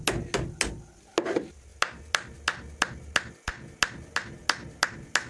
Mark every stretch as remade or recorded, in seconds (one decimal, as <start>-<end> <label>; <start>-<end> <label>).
0.0-5.3 recorded